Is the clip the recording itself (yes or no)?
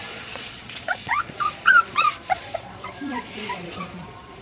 no